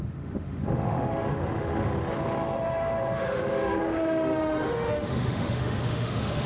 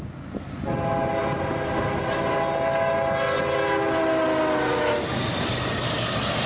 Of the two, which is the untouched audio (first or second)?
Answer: second